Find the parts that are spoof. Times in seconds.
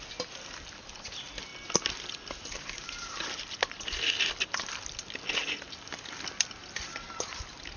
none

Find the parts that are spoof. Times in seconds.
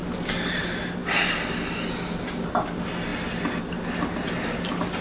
none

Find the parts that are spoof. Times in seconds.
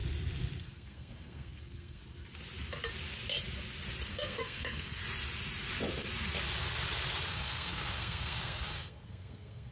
0.6-2.0; 4.1-5.0; 7.3-9.7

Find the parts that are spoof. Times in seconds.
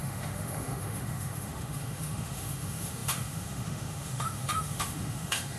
0.0-5.6